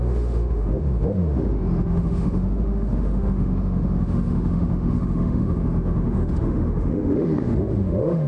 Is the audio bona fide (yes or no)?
no